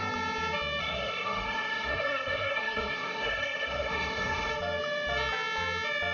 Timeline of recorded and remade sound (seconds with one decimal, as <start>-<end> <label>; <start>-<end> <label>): 0.0-0.8 recorded; 0.8-4.5 remade; 4.5-6.1 recorded